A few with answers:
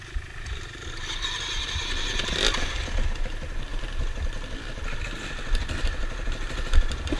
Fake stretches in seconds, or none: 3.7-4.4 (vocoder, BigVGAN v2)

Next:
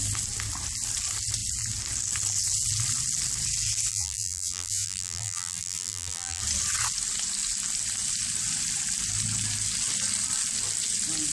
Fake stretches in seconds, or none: 3.9-6.4 (vocoder, BigVGAN v2)

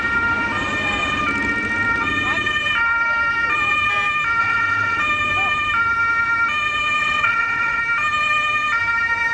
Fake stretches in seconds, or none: 4.4-5.0 (vocoder, WaveNeXt); 7.0-7.8